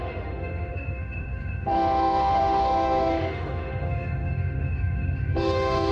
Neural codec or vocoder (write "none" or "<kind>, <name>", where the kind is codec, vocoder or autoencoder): autoencoder, DAC-VAE